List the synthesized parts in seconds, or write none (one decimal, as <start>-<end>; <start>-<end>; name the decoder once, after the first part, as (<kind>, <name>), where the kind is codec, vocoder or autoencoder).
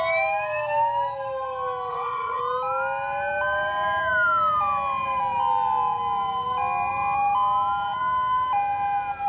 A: 1.9-2.4 (vocoder, WaveNeXt)